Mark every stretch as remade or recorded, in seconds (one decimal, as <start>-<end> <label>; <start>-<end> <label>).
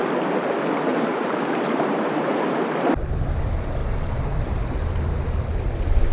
0.0-0.9 recorded; 0.9-2.5 remade; 2.5-3.8 recorded; 3.8-4.6 remade; 4.6-6.1 recorded